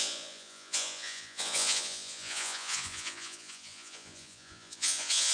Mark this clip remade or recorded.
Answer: remade